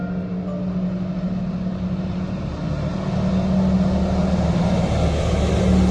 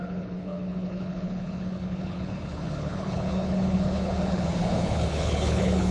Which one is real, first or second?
first